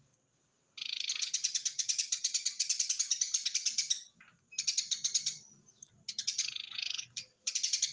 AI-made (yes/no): no